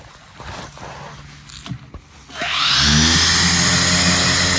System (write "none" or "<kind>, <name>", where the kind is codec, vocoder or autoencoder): none